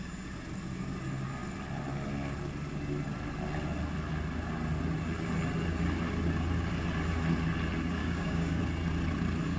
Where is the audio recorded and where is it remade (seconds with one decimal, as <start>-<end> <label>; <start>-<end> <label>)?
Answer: 0.0-8.0 recorded; 8.0-8.6 remade; 8.6-9.6 recorded